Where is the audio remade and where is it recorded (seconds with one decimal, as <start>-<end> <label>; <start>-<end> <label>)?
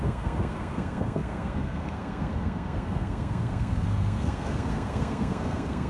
0.0-5.9 remade